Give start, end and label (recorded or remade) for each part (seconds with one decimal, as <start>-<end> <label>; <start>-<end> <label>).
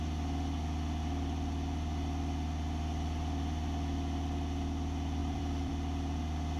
0.0-5.2 recorded; 5.2-5.7 remade; 5.7-6.6 recorded